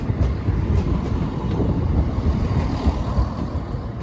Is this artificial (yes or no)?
no